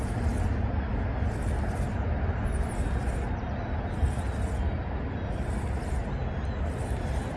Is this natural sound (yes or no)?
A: yes